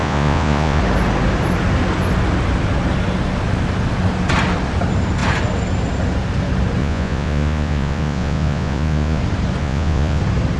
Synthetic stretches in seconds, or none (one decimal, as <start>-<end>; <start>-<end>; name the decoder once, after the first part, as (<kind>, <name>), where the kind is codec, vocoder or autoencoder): 0.0-0.8 (vocoder, Vocos); 6.8-9.2; 9.6-10.2

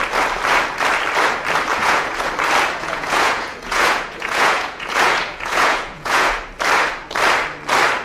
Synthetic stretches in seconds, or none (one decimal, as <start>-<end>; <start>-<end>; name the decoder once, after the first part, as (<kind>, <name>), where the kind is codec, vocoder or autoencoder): 1.7-2.3 (vocoder, Vocos); 2.8-6.4

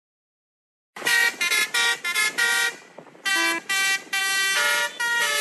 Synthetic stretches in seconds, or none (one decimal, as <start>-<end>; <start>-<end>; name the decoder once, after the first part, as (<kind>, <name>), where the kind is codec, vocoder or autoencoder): none

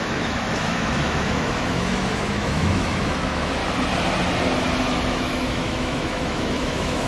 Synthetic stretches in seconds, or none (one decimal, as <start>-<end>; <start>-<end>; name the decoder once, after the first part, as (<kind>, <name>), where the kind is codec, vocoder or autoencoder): 0.0-3.6 (autoencoder, DAC-VAE); 5.1-7.1

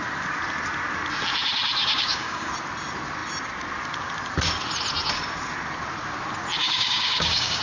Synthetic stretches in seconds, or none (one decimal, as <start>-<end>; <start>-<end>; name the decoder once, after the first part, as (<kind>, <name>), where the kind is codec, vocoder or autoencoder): 1.8-2.5 (codec, DAC); 6.6-7.6

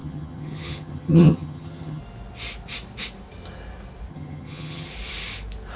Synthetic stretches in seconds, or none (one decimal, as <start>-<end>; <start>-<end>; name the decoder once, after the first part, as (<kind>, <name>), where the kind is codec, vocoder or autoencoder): 0.0-2.0 (vocoder, HiFi-GAN); 4.1-4.9

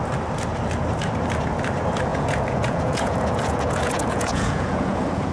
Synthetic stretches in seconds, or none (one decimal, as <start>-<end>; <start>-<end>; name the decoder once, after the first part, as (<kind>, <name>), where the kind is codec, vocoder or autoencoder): 2.1-5.3 (vocoder, Vocos)